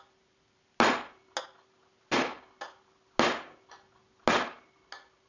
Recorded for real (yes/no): yes